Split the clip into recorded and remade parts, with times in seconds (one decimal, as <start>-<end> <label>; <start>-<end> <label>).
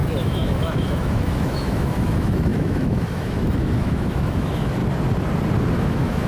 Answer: 0.0-4.8 remade; 4.8-5.8 recorded; 5.8-6.3 remade